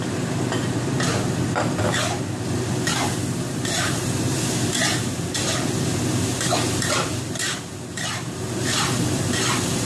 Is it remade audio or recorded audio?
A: recorded